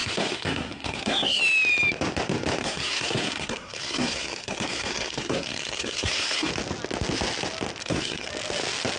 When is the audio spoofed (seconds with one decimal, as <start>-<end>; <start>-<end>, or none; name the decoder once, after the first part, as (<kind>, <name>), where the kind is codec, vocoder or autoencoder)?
0.0-1.4 (codec, SNAC); 2.6-6.5; 7.8-8.3